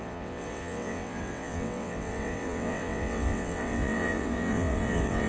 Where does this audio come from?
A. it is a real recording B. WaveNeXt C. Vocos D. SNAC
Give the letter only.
B